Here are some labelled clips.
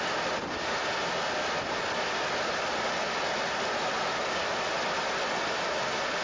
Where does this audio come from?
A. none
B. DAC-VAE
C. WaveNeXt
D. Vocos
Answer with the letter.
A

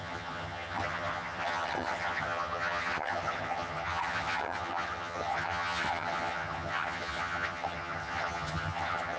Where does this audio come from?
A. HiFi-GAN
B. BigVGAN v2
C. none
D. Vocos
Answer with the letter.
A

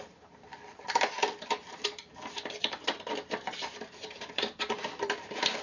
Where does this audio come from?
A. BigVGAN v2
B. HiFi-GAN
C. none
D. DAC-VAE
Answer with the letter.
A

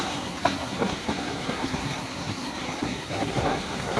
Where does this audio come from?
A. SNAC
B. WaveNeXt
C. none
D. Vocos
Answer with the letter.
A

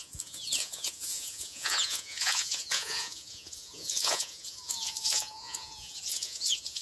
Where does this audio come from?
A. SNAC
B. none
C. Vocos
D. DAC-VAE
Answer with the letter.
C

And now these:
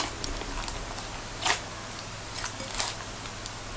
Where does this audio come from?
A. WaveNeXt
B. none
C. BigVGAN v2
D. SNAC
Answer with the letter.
B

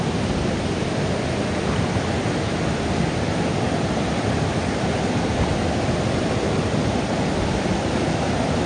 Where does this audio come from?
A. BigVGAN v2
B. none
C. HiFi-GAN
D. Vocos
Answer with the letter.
B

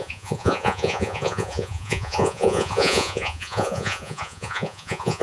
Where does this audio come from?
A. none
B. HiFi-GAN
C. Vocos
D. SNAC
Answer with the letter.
C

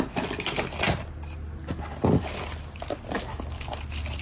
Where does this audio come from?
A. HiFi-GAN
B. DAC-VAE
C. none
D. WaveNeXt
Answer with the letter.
C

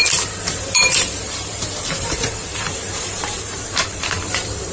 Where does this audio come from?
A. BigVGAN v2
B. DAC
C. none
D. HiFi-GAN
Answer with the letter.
A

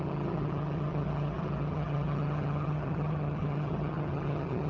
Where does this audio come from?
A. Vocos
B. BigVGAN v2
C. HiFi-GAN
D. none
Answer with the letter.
C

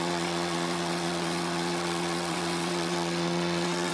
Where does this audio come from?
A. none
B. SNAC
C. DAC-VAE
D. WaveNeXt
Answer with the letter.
D